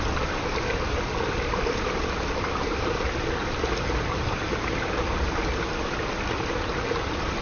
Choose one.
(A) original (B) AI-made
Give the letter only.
A